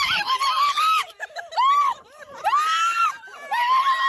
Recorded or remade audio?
remade